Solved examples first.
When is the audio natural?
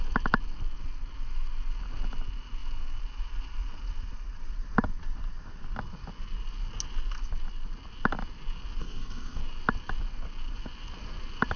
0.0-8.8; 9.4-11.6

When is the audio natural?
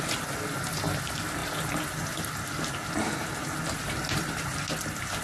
0.0-5.2